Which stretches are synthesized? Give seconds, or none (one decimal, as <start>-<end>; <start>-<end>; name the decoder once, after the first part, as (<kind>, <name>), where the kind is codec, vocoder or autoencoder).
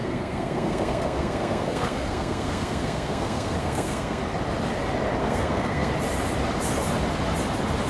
0.0-4.2 (codec, SNAC); 5.2-5.9